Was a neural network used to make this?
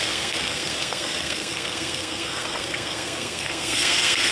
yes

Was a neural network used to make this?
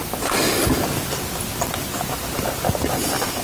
no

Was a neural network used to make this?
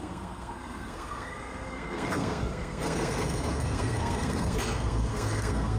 yes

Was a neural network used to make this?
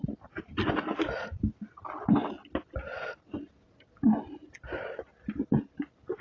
no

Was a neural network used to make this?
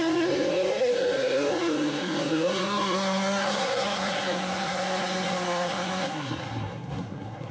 yes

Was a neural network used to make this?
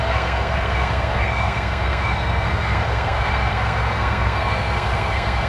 yes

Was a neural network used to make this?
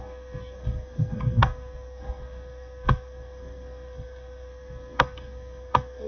yes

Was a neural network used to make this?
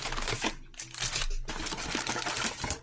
no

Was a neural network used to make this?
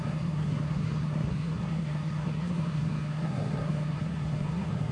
yes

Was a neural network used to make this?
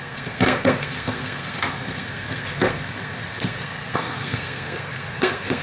yes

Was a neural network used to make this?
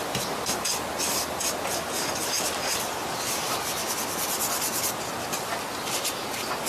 no